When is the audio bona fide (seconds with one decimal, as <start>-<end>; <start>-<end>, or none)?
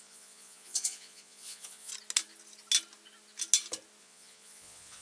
1.9-4.0